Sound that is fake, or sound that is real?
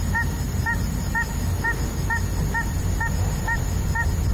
real